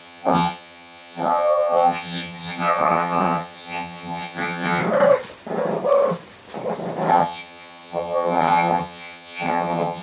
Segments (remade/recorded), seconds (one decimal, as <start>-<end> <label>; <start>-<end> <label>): 0.0-4.8 remade; 4.8-7.1 recorded; 7.1-10.0 remade